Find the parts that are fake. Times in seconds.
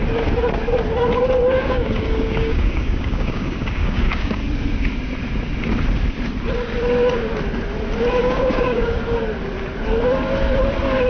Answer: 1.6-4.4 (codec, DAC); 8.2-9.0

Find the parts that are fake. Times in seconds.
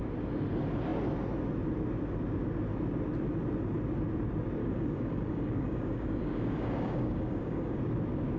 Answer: 4.6-7.8 (codec, DAC)